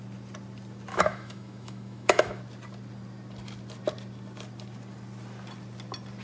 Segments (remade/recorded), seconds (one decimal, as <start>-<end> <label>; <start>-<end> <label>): 0.0-0.9 recorded; 0.9-2.4 remade; 2.4-6.2 recorded

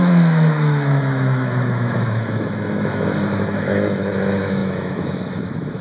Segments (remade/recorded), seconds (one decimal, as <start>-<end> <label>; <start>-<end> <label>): 0.0-5.8 remade